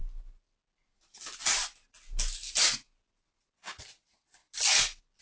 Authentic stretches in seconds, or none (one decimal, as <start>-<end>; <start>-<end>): 0.0-5.2